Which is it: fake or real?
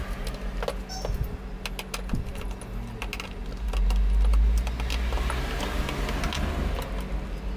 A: real